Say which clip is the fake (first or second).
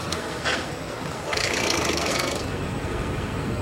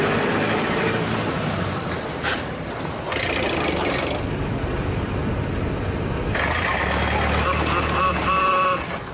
first